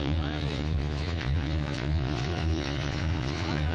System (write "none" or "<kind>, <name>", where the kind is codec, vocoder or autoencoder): vocoder, Vocos